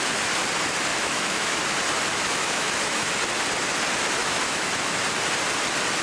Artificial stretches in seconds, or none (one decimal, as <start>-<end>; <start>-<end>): 0.9-1.6; 2.1-3.1; 4.2-5.0